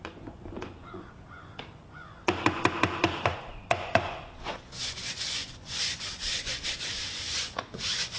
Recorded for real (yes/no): no